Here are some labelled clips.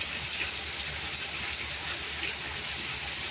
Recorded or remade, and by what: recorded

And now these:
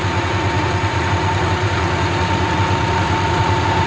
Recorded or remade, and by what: remade, vocoder, Vocos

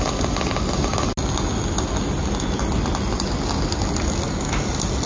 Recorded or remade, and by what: recorded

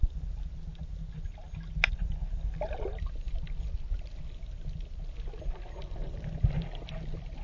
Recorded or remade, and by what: recorded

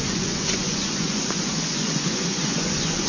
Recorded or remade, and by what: remade, vocoder, Vocos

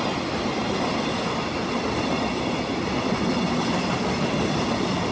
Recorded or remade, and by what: recorded